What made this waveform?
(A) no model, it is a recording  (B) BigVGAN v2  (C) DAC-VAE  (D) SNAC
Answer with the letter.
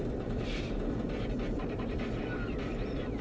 B